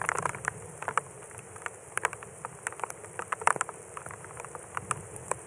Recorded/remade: recorded